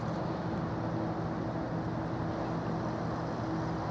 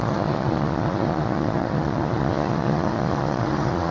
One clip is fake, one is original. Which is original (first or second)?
first